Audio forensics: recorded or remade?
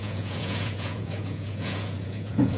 remade